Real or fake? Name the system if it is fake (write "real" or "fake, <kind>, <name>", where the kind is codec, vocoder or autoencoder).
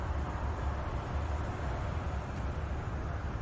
real